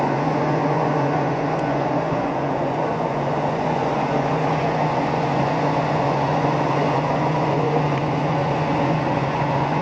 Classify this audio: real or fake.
fake